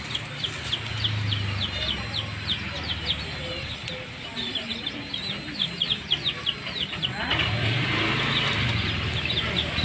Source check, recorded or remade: recorded